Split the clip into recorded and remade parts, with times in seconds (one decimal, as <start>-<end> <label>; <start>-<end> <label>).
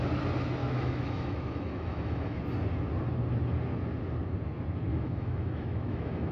0.0-0.6 recorded; 0.6-2.4 remade; 2.4-4.9 recorded; 4.9-6.3 remade